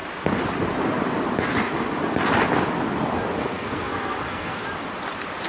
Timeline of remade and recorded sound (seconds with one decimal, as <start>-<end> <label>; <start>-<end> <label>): 0.0-3.4 recorded; 3.4-4.6 remade; 4.6-5.5 recorded